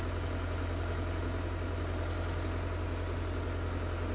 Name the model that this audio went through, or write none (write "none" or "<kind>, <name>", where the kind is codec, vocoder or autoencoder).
none